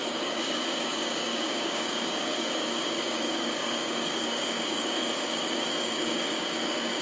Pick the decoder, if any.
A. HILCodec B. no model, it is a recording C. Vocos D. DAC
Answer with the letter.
D